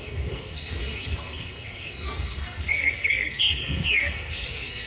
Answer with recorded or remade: remade